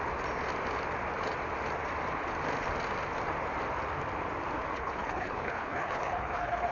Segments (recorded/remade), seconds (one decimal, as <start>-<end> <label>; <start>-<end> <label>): 0.0-4.7 recorded; 4.7-6.7 remade